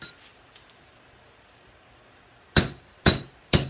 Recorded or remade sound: recorded